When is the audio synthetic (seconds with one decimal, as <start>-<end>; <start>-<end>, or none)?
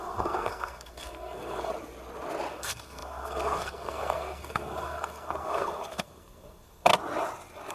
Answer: 0.0-1.7; 2.5-6.9